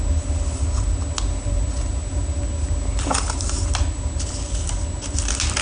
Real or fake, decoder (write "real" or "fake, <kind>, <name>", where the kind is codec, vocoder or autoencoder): real